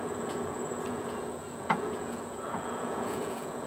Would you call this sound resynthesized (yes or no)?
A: yes